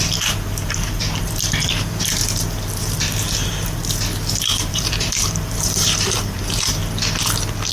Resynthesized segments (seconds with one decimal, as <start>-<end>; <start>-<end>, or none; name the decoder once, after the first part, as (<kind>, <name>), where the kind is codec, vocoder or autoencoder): 0.0-2.2 (vocoder, BigVGAN v2); 2.8-3.8; 4.3-6.8